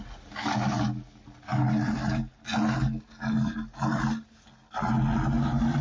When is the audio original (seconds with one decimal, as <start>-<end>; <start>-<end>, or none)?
0.0-5.8